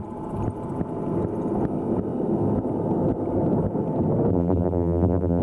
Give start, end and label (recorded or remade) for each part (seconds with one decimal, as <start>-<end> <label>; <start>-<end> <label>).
0.0-4.3 recorded; 4.3-5.4 remade